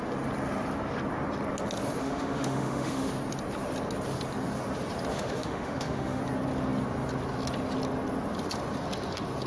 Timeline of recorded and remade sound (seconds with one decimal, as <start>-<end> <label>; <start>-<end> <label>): 0.0-2.0 recorded; 2.0-3.1 remade; 3.1-5.1 recorded; 5.1-6.2 remade; 6.2-9.5 recorded